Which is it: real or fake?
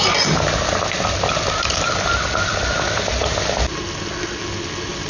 real